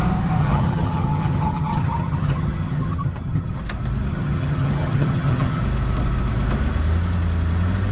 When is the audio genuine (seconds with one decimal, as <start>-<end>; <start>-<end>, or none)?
0.0-0.4; 3.6-4.1; 5.6-7.9